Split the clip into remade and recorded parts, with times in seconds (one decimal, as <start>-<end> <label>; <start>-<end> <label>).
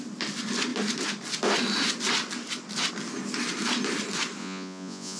0.0-4.4 recorded; 4.4-5.2 remade